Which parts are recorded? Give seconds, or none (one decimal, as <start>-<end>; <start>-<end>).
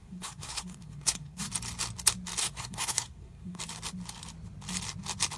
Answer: 1.5-2.4; 3.6-5.4